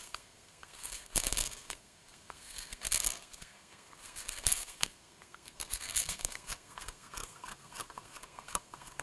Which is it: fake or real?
fake